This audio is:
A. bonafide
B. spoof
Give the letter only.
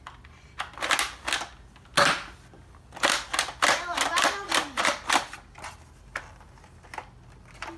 A